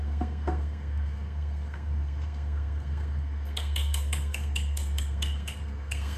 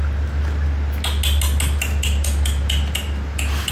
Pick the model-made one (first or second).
first